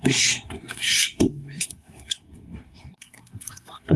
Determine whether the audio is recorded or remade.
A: remade